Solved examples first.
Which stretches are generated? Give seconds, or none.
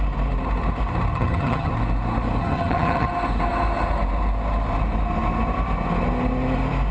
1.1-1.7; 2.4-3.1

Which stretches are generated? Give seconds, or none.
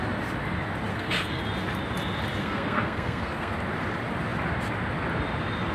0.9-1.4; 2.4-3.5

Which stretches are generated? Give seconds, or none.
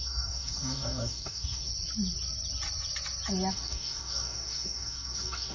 0.0-1.7; 3.5-5.5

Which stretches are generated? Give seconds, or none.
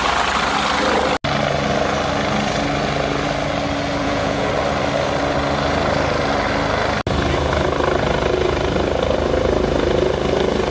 4.0-4.5